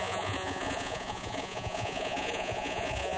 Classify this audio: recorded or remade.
remade